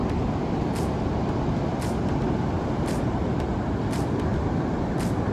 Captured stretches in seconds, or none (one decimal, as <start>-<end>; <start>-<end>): 0.0-5.3